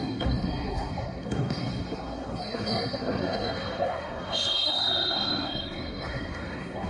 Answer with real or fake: fake